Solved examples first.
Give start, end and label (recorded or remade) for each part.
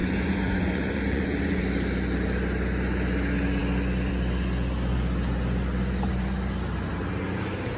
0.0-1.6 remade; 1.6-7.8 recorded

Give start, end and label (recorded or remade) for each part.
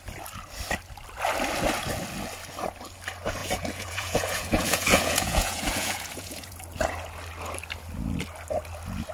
0.0-3.4 recorded; 3.4-6.6 remade; 6.6-9.1 recorded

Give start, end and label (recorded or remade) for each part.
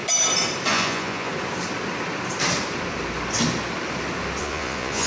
0.0-0.7 recorded; 0.7-1.3 remade; 1.3-4.4 recorded; 4.4-5.1 remade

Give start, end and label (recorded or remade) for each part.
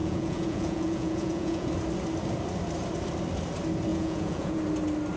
0.0-1.7 remade; 1.7-3.9 recorded; 3.9-4.6 remade; 4.6-5.2 recorded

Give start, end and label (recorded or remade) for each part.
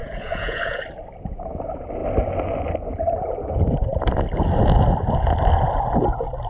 0.0-0.8 remade; 0.8-6.5 recorded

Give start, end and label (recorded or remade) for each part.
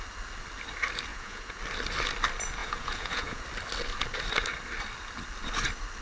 0.0-1.1 recorded; 1.1-1.6 remade; 1.6-2.6 recorded; 2.6-3.4 remade; 3.4-6.0 recorded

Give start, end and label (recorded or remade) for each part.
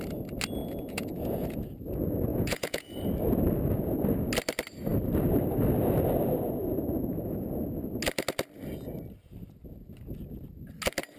0.0-0.6 recorded; 0.6-1.9 remade; 1.9-2.3 recorded; 2.3-3.0 remade; 3.0-11.2 recorded